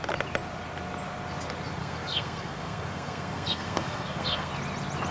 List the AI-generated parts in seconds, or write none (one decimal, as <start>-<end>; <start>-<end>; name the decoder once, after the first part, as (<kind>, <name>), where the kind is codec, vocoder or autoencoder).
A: 1.8-4.5 (codec, SNAC)